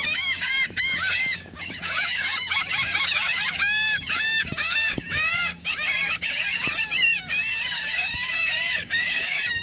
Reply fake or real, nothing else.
fake